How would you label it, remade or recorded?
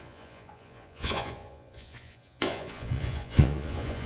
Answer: remade